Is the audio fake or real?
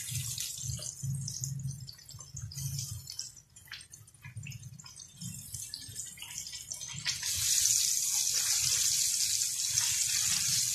real